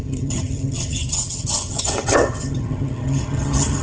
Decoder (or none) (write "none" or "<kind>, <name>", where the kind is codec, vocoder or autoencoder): vocoder, HiFi-GAN